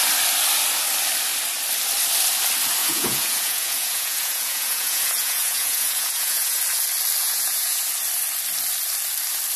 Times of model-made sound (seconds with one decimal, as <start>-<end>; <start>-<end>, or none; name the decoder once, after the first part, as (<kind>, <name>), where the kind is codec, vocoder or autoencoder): 2.8-6.6 (vocoder, Vocos); 7.2-7.8